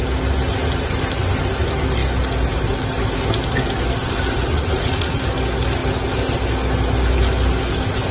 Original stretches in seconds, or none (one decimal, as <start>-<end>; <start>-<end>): 0.0-4.5; 5.2-8.1